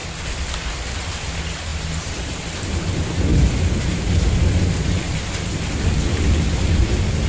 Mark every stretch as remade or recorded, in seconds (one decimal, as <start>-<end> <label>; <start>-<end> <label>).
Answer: 0.0-1.7 recorded; 1.7-2.4 remade; 2.4-3.3 recorded; 3.3-4.3 remade; 4.3-7.3 recorded